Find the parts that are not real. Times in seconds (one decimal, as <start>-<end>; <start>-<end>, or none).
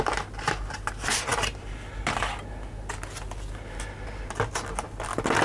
none